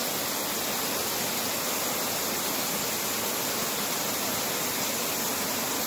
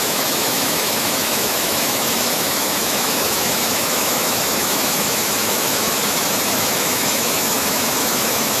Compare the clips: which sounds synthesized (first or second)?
second